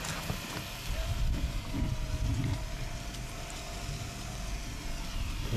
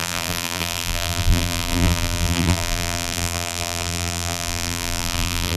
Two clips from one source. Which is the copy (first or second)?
second